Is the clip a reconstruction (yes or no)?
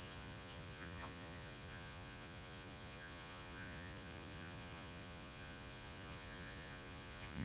yes